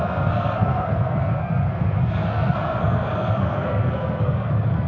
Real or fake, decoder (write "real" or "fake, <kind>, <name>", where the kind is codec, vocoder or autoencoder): fake, codec, SNAC